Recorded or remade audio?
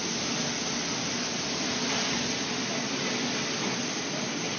recorded